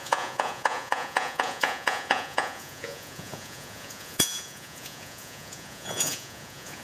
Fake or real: fake